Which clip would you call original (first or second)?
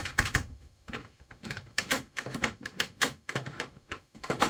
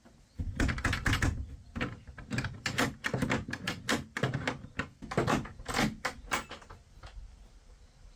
second